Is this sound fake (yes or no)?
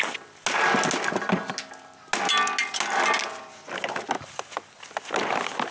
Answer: no